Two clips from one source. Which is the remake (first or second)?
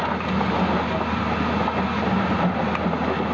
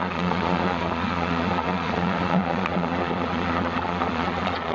second